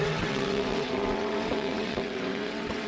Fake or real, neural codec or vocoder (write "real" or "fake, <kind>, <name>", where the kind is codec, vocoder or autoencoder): fake, vocoder, WaveNeXt